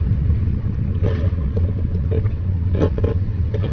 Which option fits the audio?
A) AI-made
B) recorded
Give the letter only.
A